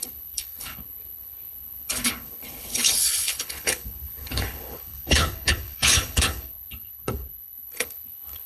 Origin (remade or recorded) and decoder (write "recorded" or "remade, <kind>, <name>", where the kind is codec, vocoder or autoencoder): remade, codec, HILCodec